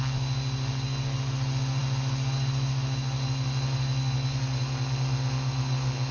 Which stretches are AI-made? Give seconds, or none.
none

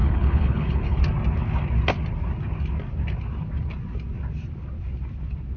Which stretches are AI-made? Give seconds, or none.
0.0-1.0 (codec, HILCodec)